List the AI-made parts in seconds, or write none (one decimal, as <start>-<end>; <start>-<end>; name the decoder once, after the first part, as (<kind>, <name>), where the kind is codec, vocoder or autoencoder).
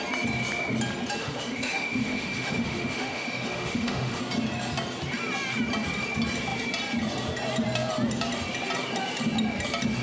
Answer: 1.2-4.2 (autoencoder, DAC-VAE)